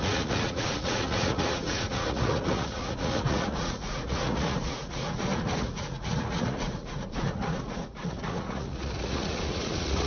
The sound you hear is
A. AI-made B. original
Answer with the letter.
A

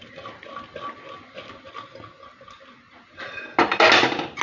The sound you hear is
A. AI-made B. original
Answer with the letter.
B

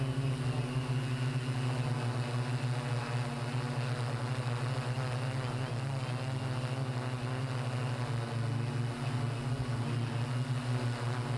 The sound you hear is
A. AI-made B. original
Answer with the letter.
B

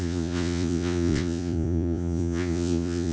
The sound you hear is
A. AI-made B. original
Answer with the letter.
A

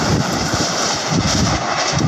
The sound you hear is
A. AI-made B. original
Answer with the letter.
A